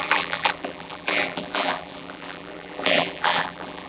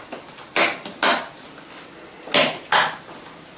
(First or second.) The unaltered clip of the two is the second